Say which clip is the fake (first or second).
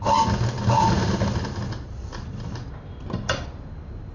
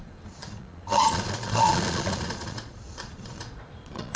second